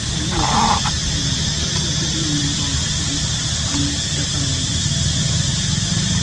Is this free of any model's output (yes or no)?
yes